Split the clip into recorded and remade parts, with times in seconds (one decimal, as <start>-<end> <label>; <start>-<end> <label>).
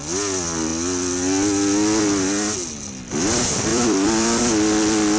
0.0-3.7 recorded; 3.7-4.4 remade; 4.4-5.2 recorded